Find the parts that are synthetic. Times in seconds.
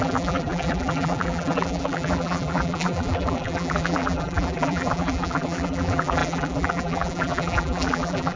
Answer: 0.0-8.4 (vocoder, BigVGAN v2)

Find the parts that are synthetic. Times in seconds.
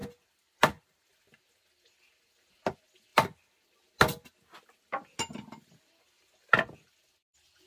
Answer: 3.1-3.9 (vocoder, BigVGAN v2)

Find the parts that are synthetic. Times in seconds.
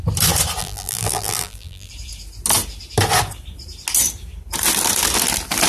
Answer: 0.6-1.9 (vocoder, BigVGAN v2)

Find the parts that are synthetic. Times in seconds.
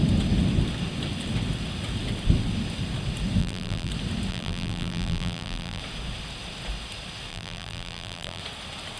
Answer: 3.4-3.9 (vocoder, BigVGAN v2); 4.3-5.8; 7.3-8.4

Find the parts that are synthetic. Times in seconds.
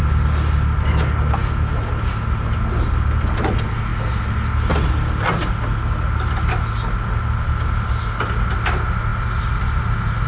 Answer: 9.1-9.6 (vocoder, BigVGAN v2)